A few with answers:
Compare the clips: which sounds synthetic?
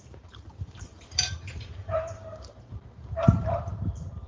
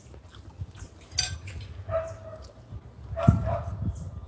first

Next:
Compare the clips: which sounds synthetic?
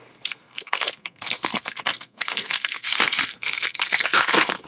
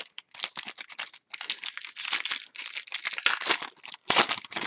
first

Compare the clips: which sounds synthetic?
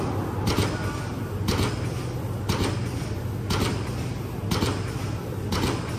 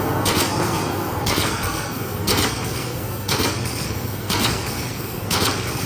second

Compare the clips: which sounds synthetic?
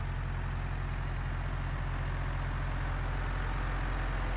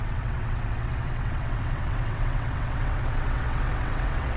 second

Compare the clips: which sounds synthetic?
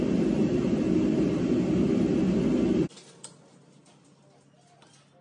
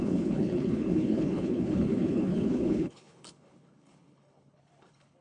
second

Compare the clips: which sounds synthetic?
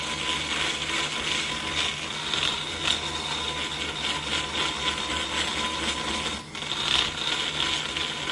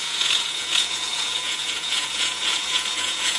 second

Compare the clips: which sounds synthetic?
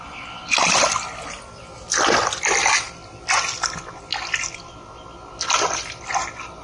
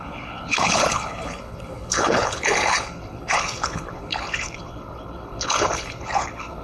second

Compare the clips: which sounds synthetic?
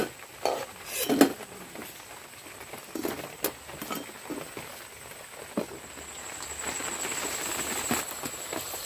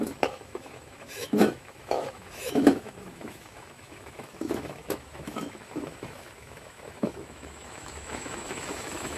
second